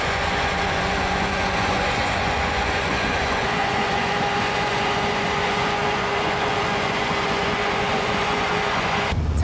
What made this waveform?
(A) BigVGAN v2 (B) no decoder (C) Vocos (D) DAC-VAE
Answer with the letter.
C